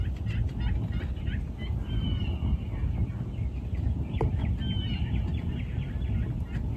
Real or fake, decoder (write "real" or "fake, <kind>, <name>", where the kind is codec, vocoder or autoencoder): real